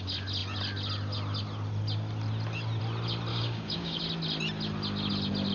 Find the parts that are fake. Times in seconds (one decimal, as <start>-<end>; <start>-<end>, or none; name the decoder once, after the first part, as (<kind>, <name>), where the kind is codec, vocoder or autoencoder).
3.3-4.0 (codec, DAC)